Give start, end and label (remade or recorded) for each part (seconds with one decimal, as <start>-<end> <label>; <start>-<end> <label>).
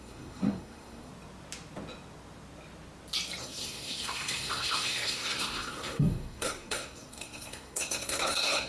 0.0-1.1 remade; 1.1-3.4 recorded; 3.4-8.7 remade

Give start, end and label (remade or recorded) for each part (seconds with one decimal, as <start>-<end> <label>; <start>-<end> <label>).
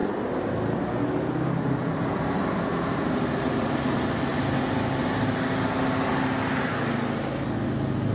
0.0-8.1 recorded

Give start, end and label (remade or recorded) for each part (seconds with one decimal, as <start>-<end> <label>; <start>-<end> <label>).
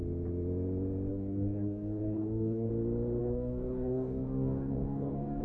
0.0-1.1 recorded; 1.1-2.7 remade; 2.7-3.2 recorded; 3.2-5.4 remade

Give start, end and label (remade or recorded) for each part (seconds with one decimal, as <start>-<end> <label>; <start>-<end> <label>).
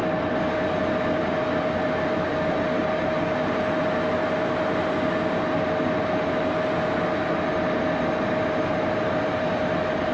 0.0-10.1 recorded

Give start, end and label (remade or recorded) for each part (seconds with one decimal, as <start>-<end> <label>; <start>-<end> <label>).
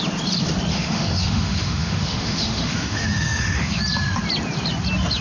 0.0-0.7 recorded; 0.7-3.8 remade; 3.8-5.2 recorded